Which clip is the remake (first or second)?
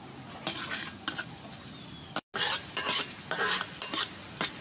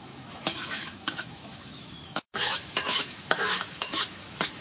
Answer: second